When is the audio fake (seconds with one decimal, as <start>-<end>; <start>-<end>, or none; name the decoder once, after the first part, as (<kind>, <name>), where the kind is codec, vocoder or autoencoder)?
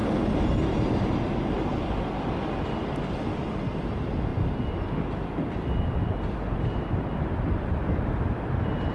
none